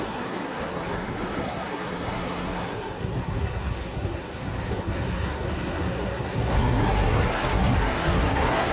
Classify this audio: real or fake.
fake